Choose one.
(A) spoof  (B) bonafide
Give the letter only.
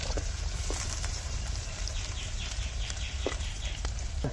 A